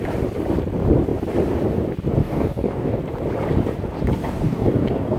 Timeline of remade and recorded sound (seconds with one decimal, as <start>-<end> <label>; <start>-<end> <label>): 0.0-2.2 recorded; 2.2-3.0 remade; 3.0-4.2 recorded; 4.2-5.2 remade